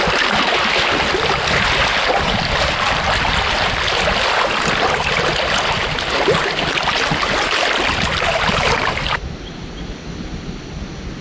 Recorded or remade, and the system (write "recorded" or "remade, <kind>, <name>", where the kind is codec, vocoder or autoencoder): recorded